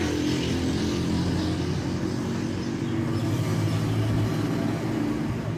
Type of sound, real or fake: real